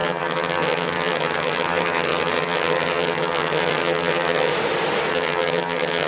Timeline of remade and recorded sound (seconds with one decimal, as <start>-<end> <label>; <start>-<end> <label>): 0.0-4.5 remade; 4.5-5.1 recorded; 5.1-6.1 remade